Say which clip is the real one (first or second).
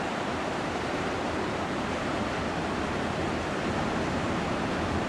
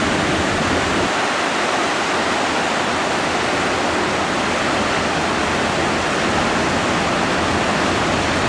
second